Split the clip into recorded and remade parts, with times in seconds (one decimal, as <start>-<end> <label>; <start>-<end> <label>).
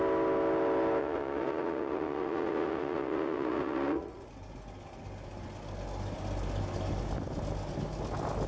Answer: 0.0-1.0 recorded; 1.0-4.3 remade; 4.3-8.5 recorded